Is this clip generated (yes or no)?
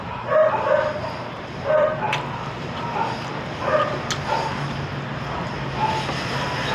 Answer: no